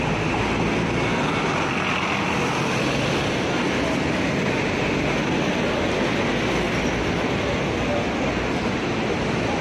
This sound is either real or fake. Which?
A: real